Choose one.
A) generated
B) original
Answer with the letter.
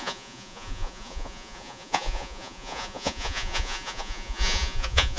A